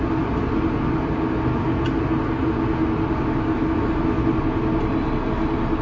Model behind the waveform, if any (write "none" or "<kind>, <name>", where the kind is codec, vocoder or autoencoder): none